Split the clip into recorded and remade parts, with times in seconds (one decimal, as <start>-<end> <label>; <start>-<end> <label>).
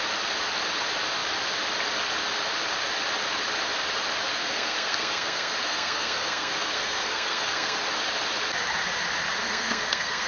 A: 0.0-4.3 recorded; 4.3-7.8 remade; 7.8-9.4 recorded; 9.4-10.3 remade